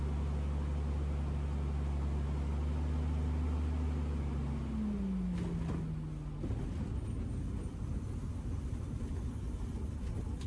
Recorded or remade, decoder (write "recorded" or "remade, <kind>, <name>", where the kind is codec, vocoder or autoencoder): recorded